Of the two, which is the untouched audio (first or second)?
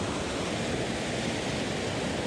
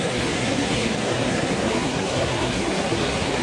first